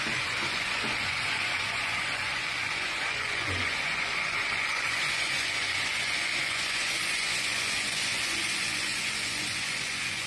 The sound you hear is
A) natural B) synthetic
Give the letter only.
B